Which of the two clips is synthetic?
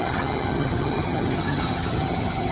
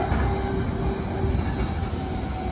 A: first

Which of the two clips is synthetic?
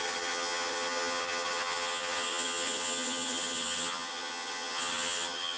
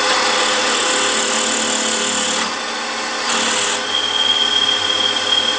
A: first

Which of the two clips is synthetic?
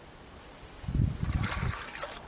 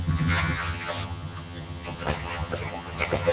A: second